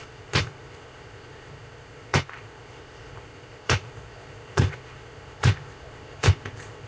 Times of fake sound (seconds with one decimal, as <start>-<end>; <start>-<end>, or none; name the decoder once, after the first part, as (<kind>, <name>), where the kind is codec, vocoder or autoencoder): 0.0-6.9 (codec, ZipCodec)